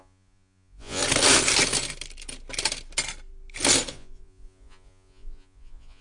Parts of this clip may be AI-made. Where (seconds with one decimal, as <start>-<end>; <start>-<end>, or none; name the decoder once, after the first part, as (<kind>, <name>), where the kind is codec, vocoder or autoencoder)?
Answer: 0.0-1.0 (vocoder, Vocos); 3.9-6.0